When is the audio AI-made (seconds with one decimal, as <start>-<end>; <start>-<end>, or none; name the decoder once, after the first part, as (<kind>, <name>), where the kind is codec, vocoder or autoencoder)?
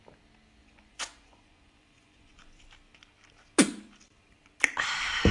0.6-2.6 (vocoder, Vocos)